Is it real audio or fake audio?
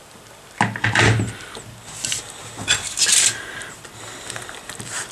real